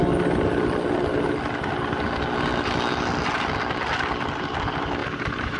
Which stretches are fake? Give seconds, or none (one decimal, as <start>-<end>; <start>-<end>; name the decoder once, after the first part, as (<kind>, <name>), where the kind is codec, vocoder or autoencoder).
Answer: 5.0-5.6 (vocoder, BigVGAN v2)